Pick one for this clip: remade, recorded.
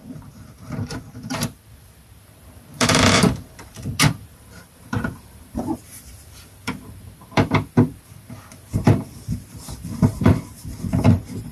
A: remade